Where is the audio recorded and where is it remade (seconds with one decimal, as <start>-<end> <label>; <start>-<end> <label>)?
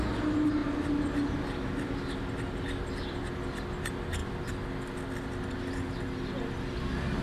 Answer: 0.0-7.2 recorded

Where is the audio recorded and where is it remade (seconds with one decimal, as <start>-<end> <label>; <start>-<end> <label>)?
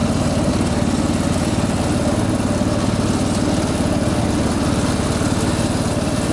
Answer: 0.0-6.3 recorded